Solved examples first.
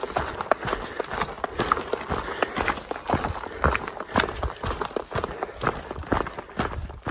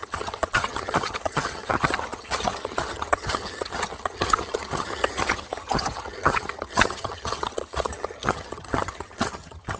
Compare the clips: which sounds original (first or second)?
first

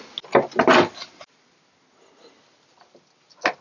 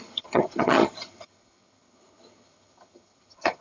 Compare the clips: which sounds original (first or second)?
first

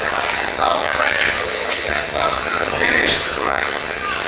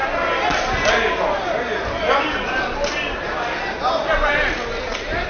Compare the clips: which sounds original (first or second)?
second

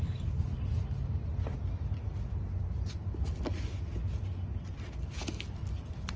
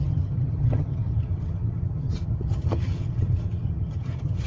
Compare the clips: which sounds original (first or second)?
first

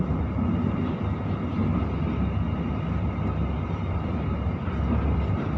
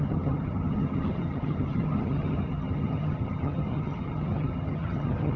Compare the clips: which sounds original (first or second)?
first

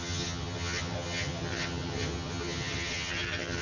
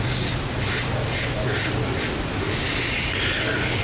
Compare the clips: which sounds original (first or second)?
second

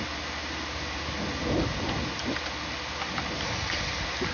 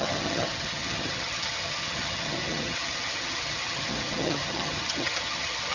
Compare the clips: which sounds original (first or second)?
first